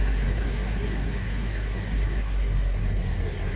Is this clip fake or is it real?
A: fake